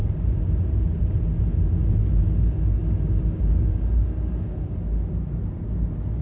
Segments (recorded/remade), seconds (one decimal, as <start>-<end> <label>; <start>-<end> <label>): 0.0-1.4 remade; 1.4-6.2 recorded